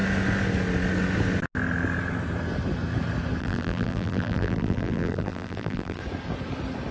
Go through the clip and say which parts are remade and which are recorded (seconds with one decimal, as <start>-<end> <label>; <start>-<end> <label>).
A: 0.0-3.4 recorded; 3.4-6.0 remade; 6.0-6.9 recorded